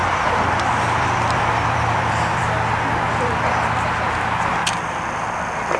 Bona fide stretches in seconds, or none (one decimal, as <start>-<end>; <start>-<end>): 2.7-4.6; 5.2-5.8